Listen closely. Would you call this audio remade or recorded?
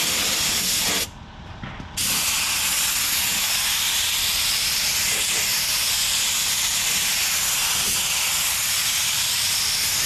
recorded